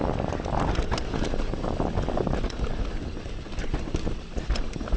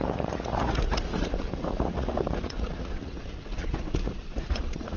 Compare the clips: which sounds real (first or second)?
first